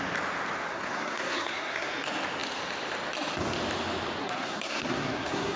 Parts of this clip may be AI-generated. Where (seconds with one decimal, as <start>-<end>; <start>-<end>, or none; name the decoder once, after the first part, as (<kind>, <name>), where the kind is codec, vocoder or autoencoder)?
0.7-1.9 (codec, SNAC); 4.2-5.6